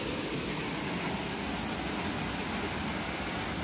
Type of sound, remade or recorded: recorded